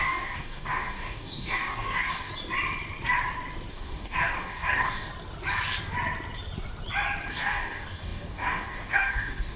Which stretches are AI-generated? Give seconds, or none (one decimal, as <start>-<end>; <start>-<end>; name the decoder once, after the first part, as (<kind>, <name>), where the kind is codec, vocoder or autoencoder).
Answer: 0.0-2.3 (codec, DAC); 3.7-5.1; 7.3-9.6